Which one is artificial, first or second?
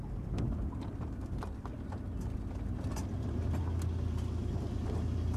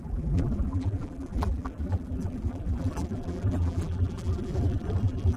second